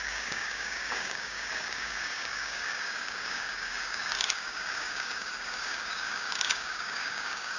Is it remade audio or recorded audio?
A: remade